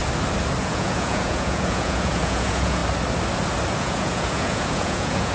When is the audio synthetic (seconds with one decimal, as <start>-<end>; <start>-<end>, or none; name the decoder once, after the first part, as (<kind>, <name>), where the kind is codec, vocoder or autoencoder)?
0.6-2.8 (vocoder, Vocos); 3.8-5.3